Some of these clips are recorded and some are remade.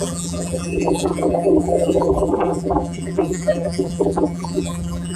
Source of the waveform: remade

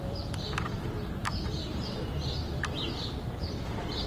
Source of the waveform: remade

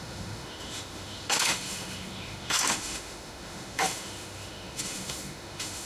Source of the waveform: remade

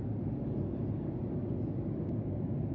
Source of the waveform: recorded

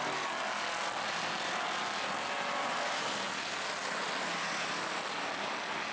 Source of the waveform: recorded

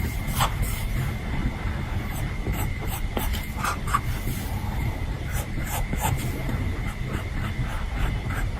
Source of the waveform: remade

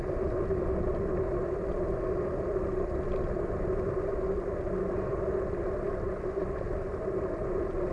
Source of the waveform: recorded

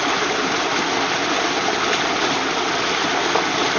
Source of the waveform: recorded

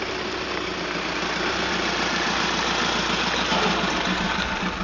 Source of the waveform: recorded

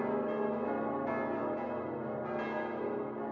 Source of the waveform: recorded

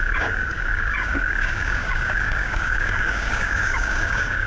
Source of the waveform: remade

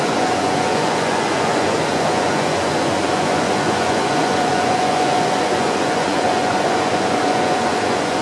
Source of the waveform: remade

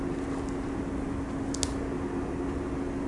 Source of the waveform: recorded